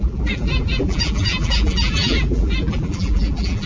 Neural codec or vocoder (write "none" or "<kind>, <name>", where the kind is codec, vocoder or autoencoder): vocoder, BigVGAN v2